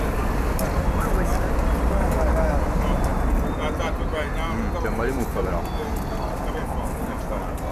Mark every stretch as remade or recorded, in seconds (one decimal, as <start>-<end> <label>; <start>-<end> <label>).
0.0-7.7 recorded